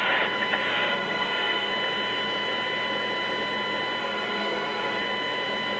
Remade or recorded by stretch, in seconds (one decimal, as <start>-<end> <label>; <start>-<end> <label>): 0.0-0.7 recorded; 0.7-1.7 remade; 1.7-4.0 recorded; 4.0-5.0 remade; 5.0-5.8 recorded